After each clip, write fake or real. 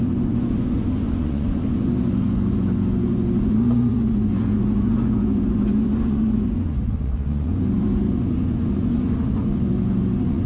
fake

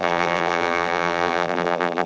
fake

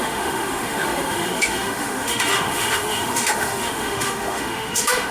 fake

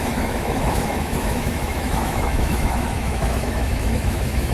fake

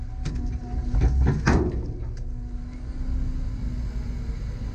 real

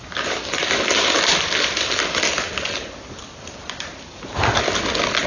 real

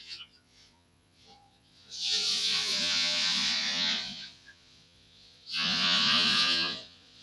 fake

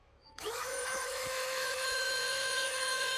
fake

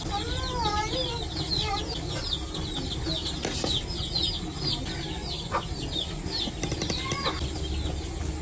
real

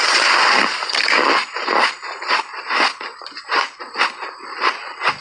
real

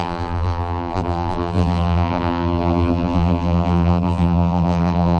fake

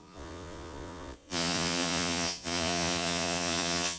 fake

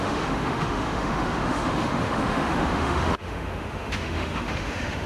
fake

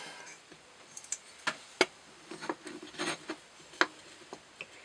real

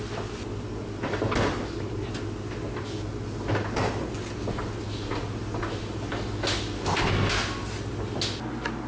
real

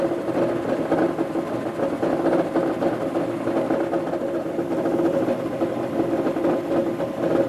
real